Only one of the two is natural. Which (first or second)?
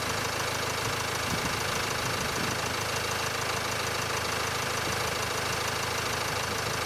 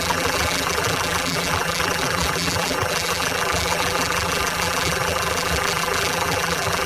first